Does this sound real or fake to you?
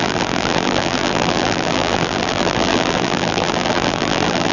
fake